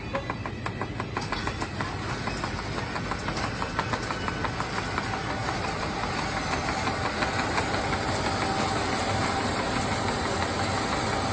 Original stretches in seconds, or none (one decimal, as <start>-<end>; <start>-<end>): 0.0-11.3